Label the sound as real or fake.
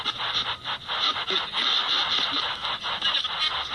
real